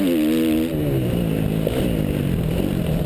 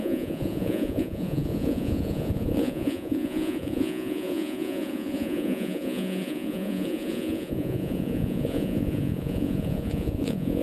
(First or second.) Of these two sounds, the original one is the first